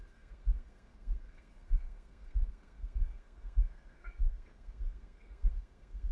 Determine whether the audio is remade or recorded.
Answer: remade